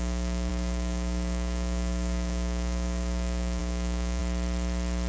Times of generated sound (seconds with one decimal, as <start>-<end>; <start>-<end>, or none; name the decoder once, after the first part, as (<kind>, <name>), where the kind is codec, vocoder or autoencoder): 0.0-4.2 (codec, DAC)